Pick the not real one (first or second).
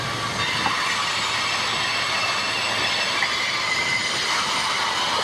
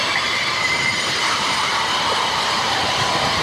second